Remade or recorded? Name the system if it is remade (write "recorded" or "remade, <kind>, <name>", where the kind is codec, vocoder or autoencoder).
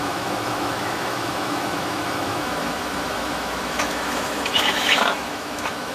remade, autoencoder, DAC-VAE